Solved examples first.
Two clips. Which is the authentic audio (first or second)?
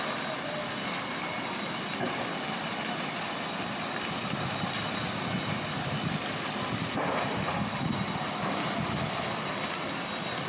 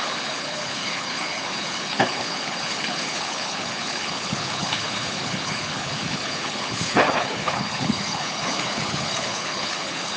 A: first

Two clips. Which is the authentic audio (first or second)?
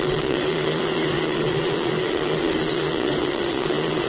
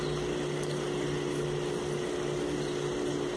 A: second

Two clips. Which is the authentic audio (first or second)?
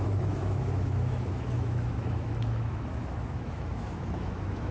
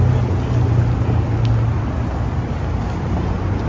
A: second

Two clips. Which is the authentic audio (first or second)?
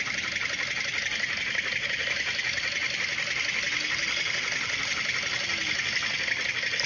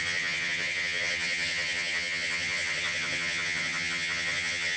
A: first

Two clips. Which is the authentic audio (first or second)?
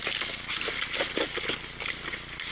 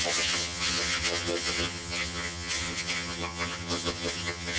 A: first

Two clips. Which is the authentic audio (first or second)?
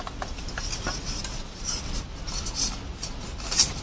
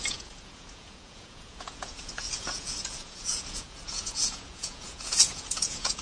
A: first